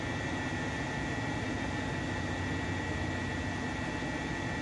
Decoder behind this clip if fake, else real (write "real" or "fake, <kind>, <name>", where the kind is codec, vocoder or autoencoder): real